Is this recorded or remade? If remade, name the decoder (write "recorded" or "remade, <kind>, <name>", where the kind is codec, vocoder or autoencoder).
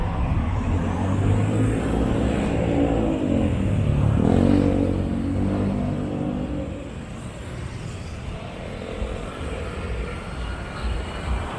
recorded